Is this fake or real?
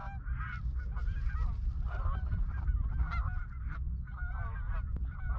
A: real